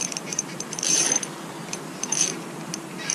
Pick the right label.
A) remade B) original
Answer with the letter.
A